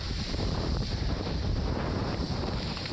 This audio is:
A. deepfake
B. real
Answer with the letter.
A